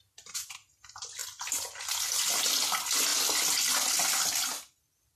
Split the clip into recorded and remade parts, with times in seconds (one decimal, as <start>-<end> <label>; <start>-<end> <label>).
0.0-1.2 recorded; 1.2-2.4 remade; 2.4-5.2 recorded